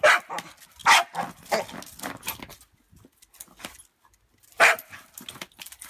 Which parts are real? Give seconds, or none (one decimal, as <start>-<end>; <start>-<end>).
0.0-5.9